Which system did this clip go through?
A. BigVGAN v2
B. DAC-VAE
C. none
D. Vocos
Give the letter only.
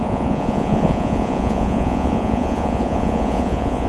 D